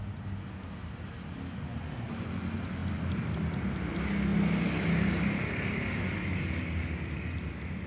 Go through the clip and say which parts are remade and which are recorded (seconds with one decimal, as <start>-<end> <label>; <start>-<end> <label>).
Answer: 0.0-7.9 recorded